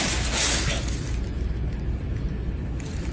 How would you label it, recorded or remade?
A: recorded